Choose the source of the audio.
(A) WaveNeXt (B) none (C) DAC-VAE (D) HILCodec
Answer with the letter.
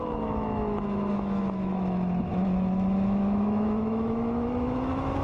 C